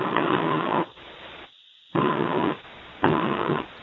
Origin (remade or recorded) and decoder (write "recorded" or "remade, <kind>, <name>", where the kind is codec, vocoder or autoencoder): remade, vocoder, Vocos